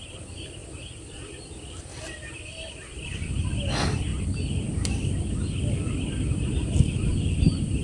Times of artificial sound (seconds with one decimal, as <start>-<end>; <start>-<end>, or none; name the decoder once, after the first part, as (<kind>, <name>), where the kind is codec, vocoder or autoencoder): none